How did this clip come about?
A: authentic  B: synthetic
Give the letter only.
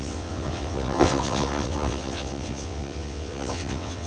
B